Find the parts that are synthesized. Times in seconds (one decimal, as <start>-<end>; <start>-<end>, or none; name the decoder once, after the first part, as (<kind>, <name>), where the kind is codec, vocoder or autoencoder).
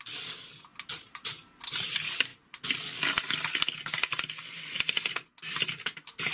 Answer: none